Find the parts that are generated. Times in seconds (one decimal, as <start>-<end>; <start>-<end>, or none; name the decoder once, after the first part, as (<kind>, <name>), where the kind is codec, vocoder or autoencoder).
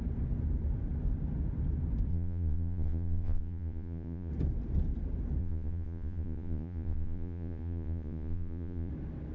2.1-4.3 (vocoder, Vocos); 5.4-8.9